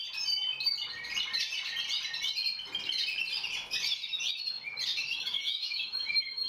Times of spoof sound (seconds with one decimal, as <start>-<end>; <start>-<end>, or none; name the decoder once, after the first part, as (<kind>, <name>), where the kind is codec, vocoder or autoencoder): 4.9-6.5 (autoencoder, DAC-VAE)

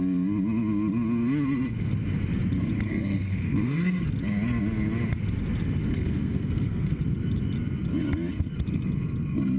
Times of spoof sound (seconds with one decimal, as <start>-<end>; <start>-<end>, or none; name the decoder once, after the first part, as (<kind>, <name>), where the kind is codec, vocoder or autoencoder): 2.9-4.0 (codec, SNAC); 5.9-7.0

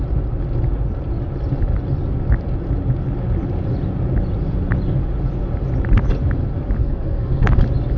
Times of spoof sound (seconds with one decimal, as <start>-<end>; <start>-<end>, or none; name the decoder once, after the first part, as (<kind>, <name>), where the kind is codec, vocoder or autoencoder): 6.8-7.5 (codec, SNAC)

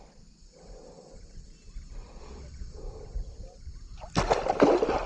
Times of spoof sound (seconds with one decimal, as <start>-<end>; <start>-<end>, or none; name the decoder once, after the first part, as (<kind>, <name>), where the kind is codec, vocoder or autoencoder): 2.2-2.8 (vocoder, Vocos)

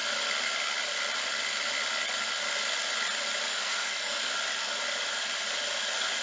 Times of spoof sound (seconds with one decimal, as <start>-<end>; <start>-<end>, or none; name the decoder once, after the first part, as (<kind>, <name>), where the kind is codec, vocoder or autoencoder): 3.5-4.3 (codec, SNAC)